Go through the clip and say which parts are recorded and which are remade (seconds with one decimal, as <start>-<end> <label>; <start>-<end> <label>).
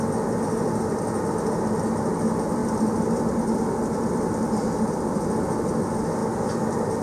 0.0-2.6 recorded; 2.6-5.0 remade; 5.0-6.2 recorded; 6.2-7.0 remade